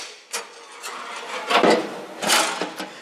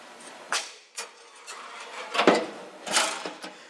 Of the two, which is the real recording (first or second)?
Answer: first